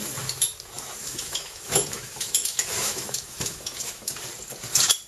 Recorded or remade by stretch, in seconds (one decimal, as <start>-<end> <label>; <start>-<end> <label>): 0.0-1.0 recorded; 1.0-4.1 remade; 4.1-5.1 recorded